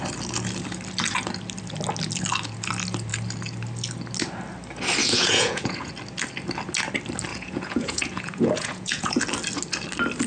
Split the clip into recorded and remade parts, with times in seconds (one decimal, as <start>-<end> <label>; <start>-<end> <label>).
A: 0.0-5.0 recorded; 5.0-5.9 remade; 5.9-7.3 recorded; 7.3-9.2 remade; 9.2-10.3 recorded